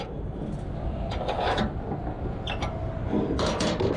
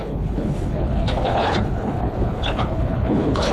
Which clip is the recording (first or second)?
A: first